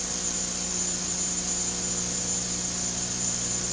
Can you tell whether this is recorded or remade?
recorded